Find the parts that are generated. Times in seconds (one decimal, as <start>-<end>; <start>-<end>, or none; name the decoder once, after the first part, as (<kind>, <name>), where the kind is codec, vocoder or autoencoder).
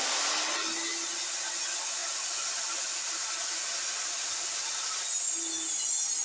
none